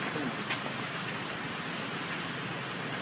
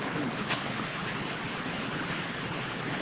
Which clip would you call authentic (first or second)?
first